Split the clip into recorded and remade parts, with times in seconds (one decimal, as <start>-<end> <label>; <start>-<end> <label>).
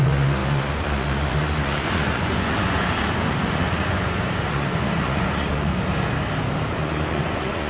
0.0-5.7 remade; 5.7-6.7 recorded; 6.7-7.7 remade